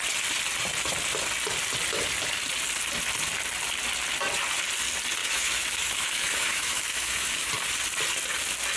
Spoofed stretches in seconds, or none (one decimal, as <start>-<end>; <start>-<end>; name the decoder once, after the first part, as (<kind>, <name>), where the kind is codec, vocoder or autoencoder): 5.2-7.5 (autoencoder, DAC-VAE)